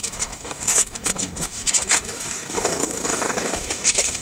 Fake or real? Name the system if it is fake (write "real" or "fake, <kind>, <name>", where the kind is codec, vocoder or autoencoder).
fake, codec, DAC